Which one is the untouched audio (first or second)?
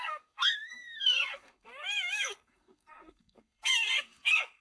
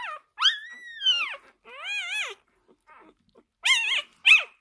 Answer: second